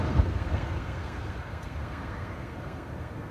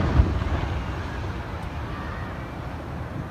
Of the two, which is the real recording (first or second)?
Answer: second